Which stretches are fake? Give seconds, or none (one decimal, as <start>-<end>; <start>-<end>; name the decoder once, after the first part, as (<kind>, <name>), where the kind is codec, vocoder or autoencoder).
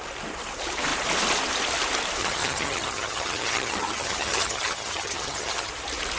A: 2.2-5.7 (vocoder, HiFi-GAN)